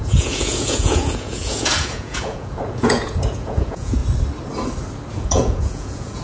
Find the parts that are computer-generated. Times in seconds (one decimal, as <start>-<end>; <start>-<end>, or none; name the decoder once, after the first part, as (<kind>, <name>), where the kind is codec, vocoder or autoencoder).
0.0-4.0 (vocoder, Vocos); 5.1-6.2